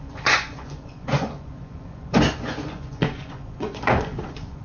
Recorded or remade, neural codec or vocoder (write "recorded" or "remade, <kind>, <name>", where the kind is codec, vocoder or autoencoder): remade, vocoder, Vocos